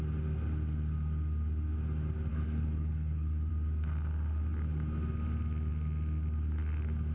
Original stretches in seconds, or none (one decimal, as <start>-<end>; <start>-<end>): 0.0-2.3; 3.5-7.1